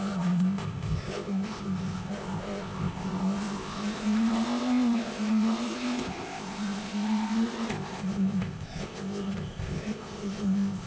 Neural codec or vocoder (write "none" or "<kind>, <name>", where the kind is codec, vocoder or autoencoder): codec, ZipCodec